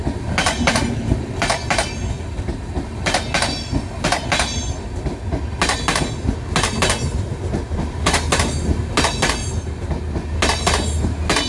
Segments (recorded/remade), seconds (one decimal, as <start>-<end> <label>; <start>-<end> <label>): 0.0-11.5 recorded